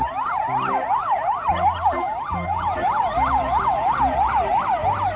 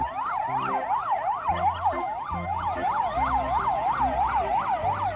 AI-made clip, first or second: first